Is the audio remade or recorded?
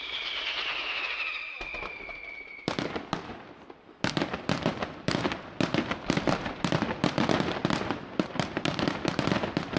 remade